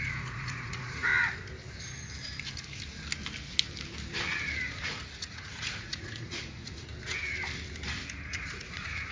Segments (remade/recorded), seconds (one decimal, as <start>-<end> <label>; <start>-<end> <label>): 0.0-1.1 remade; 1.1-4.7 recorded; 4.7-6.9 remade; 6.9-8.3 recorded; 8.3-9.1 remade